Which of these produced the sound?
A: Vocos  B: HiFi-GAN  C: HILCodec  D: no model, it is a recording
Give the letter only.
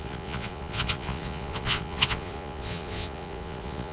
A